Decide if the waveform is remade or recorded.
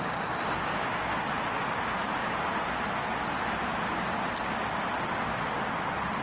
recorded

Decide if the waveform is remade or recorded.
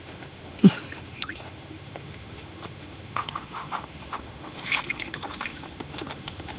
remade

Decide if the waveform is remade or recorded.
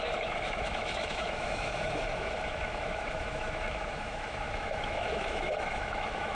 remade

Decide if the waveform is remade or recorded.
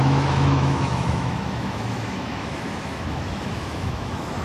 remade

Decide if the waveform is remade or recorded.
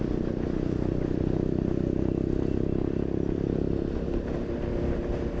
recorded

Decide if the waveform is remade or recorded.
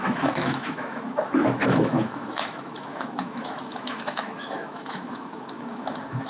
remade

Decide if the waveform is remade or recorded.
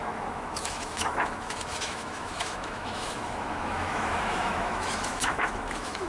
remade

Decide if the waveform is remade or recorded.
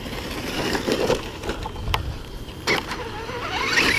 recorded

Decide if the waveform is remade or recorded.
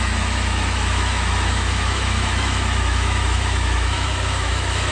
remade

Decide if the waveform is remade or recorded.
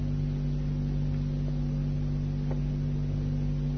recorded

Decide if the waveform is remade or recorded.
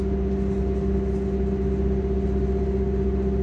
recorded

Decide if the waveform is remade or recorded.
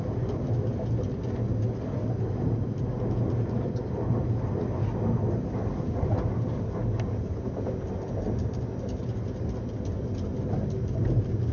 recorded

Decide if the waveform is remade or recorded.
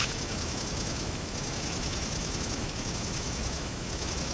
remade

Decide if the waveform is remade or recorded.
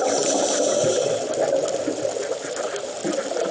recorded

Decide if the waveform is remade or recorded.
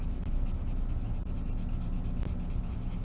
recorded